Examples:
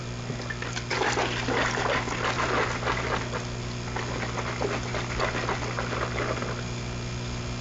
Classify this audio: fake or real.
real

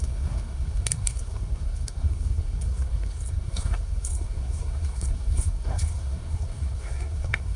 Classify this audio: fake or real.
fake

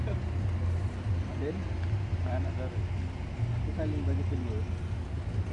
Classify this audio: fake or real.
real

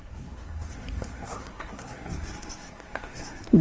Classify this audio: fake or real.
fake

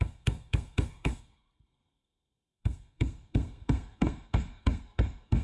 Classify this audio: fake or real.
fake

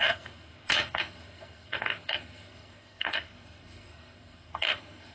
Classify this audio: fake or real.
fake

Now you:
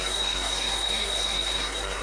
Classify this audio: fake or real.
fake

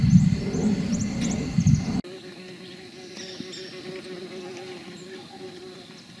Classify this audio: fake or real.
real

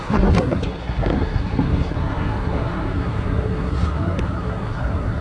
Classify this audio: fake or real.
fake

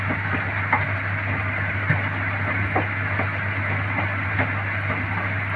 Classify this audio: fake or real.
real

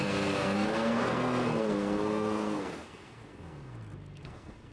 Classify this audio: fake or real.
fake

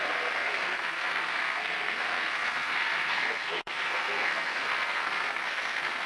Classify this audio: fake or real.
fake